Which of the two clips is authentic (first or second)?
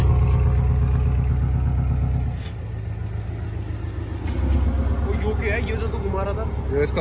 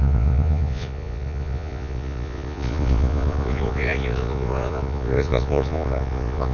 first